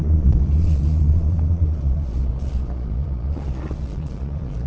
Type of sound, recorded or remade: remade